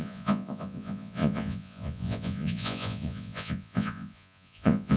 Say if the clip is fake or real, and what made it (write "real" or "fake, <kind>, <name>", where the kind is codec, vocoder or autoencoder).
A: fake, vocoder, Vocos